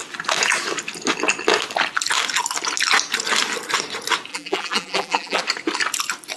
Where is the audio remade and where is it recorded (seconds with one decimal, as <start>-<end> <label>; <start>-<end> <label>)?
0.0-4.3 recorded; 4.3-5.4 remade; 5.4-6.4 recorded